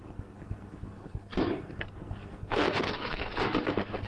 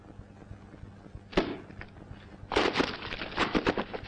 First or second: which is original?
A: second